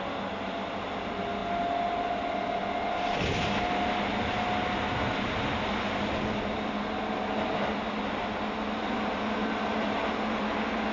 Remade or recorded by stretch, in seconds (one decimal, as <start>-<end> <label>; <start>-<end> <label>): 0.0-10.9 recorded